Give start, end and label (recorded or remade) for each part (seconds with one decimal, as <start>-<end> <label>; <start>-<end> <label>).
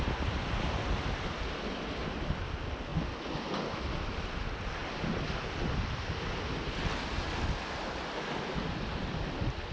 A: 0.0-9.7 recorded